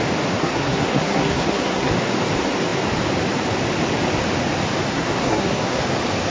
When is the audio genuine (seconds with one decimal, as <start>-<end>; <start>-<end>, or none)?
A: 0.0-0.4; 1.9-4.9; 5.8-6.3